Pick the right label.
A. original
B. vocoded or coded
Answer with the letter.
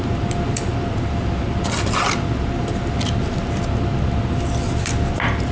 A